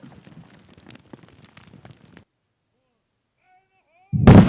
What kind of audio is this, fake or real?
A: real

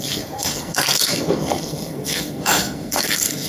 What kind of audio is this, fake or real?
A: fake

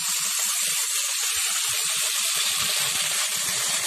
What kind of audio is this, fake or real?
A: fake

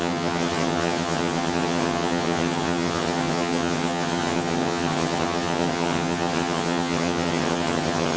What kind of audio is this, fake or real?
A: fake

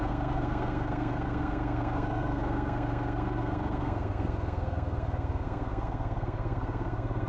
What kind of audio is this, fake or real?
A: fake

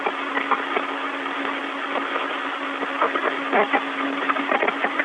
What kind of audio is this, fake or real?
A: real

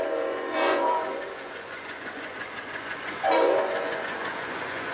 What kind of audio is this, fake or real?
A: fake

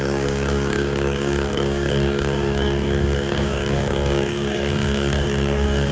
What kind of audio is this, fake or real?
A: fake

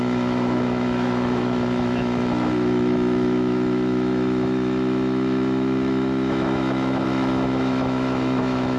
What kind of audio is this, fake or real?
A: fake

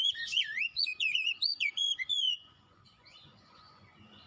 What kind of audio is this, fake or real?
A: fake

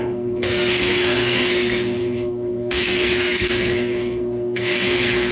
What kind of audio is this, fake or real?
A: fake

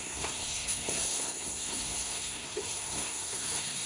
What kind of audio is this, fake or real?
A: fake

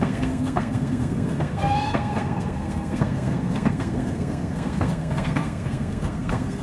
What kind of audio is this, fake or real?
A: fake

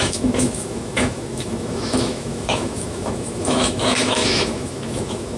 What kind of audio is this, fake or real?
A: fake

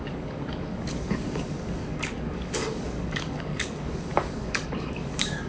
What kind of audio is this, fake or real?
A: fake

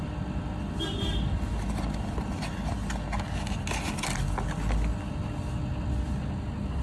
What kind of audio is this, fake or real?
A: real